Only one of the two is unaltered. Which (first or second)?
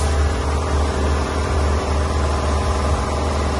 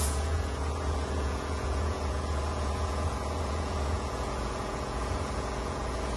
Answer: first